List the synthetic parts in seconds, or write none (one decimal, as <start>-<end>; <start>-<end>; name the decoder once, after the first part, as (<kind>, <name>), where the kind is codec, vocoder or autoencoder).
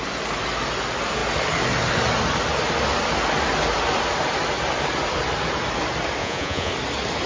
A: 6.2-6.7 (vocoder, Vocos)